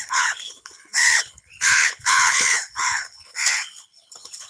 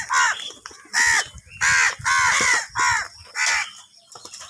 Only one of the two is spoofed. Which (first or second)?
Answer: first